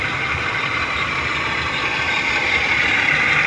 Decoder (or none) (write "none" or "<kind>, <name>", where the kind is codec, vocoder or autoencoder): none